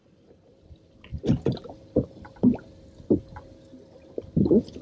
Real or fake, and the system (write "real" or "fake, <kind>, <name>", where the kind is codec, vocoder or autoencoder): real